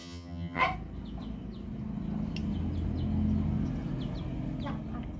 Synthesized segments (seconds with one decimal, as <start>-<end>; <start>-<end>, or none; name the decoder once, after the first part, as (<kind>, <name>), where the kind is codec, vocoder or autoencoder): 0.0-0.6 (vocoder, HiFi-GAN)